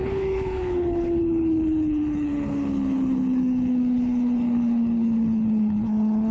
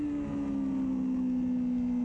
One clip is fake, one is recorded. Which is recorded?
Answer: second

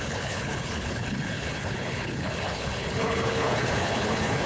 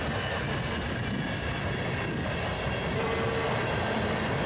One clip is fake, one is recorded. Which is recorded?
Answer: second